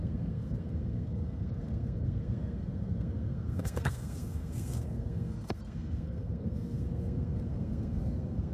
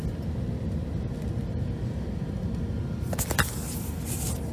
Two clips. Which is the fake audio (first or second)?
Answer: first